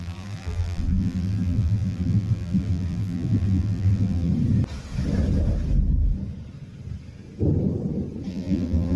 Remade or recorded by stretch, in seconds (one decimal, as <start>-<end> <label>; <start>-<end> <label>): 0.0-4.3 remade; 4.3-8.3 recorded; 8.3-9.0 remade